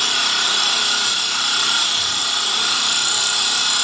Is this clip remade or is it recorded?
remade